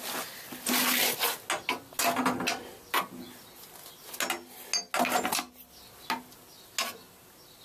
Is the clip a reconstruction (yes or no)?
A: no